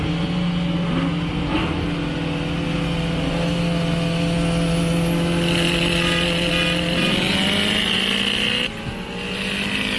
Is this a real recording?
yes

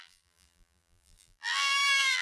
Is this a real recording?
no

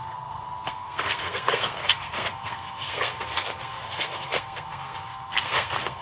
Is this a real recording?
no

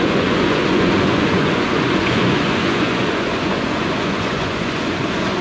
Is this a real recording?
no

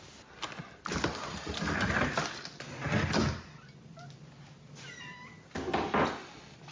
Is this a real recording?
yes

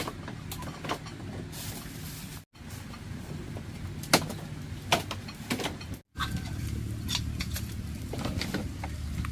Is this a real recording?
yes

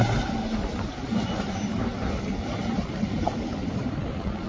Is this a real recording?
yes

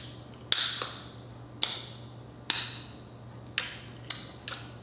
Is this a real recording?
yes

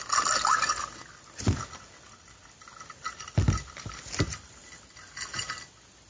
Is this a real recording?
yes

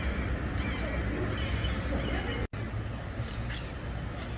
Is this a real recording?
yes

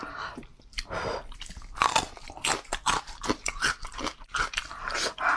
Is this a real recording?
yes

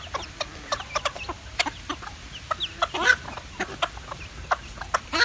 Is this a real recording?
yes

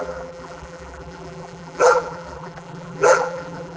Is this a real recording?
no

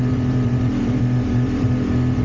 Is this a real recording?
no